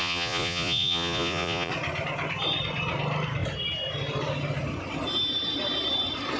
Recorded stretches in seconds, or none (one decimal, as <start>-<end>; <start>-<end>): 1.7-6.4